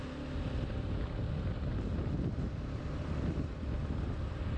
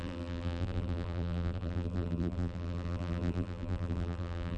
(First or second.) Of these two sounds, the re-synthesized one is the second